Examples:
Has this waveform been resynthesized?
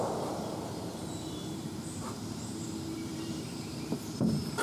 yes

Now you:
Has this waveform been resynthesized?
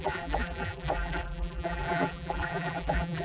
yes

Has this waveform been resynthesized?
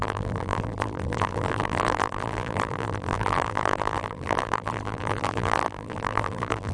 yes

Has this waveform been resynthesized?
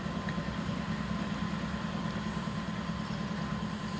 no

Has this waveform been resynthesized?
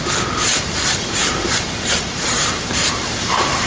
yes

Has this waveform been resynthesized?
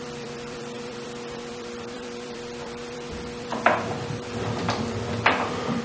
yes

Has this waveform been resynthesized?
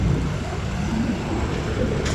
no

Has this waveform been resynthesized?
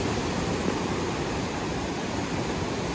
yes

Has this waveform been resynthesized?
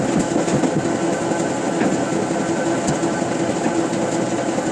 no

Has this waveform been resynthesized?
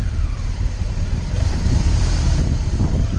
yes